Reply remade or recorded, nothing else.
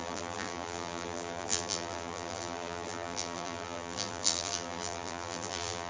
remade